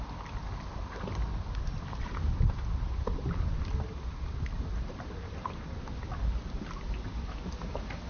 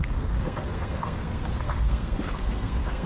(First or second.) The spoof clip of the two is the second